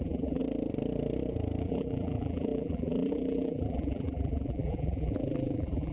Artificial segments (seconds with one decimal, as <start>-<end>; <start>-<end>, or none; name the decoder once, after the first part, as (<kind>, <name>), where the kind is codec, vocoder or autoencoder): 0.0-0.4 (vocoder, BigVGAN v2); 1.6-5.9